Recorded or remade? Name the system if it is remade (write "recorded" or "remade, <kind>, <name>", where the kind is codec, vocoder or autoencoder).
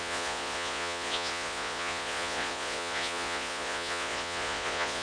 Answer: remade, vocoder, Vocos